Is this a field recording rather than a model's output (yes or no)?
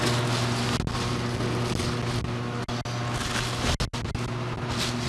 yes